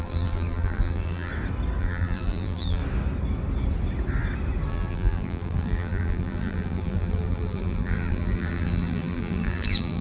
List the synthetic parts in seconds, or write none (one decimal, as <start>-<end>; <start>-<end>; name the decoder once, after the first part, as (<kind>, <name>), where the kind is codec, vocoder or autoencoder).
0.0-1.3 (vocoder, BigVGAN v2); 1.8-2.8; 4.7-10.0